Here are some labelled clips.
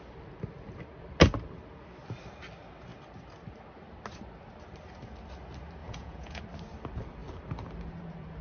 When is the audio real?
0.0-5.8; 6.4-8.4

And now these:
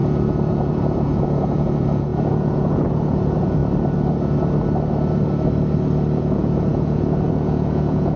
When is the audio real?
3.6-6.2

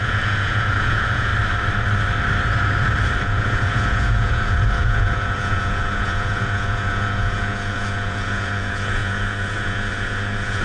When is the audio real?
1.3-3.2

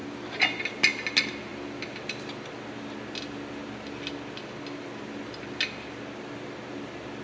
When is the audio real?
0.0-7.2

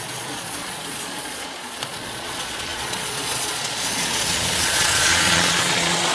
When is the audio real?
none

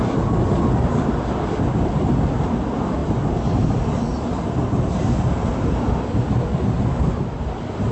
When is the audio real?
0.0-7.9

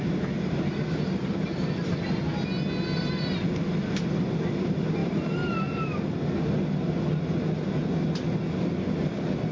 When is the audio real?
0.0-9.5

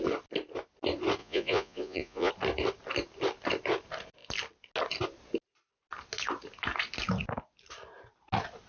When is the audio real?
0.0-1.2; 2.3-8.7